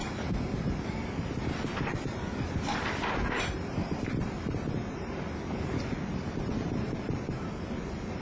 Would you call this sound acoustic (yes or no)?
no